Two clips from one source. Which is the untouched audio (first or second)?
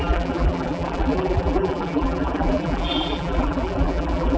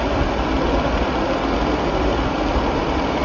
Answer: second